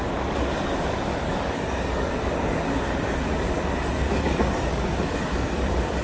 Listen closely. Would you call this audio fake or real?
fake